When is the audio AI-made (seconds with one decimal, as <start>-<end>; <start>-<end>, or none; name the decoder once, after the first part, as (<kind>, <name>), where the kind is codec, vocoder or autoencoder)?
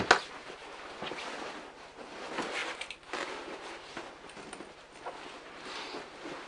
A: none